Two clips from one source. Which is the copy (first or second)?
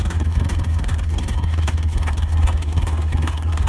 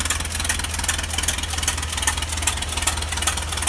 first